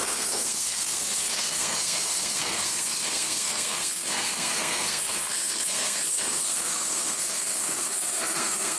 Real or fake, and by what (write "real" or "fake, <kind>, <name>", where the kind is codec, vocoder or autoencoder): fake, codec, SNAC